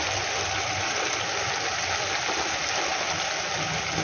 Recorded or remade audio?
recorded